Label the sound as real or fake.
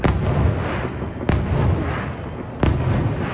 real